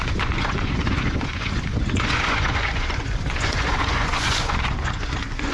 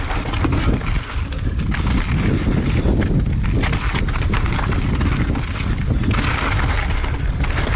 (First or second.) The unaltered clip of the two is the second